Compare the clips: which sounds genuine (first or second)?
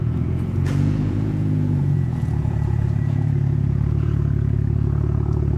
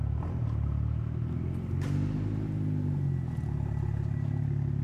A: second